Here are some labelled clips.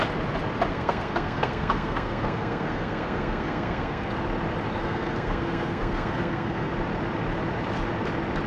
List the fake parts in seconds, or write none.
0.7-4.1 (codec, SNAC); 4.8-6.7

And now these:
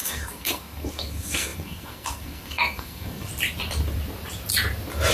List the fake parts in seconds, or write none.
0.0-3.3 (codec, SNAC)

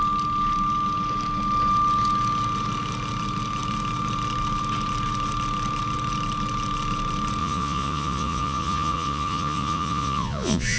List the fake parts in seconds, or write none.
7.4-10.8 (vocoder, Vocos)

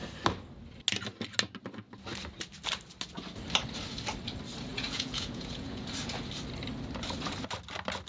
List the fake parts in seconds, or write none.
4.7-5.8 (vocoder, Vocos)

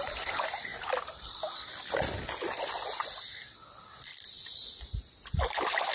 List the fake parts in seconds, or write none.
0.7-1.2 (vocoder, BigVGAN v2)